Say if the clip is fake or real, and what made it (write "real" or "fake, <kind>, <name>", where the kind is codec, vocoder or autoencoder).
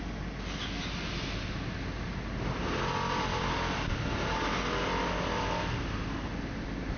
real